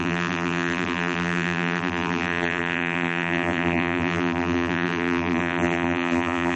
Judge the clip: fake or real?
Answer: fake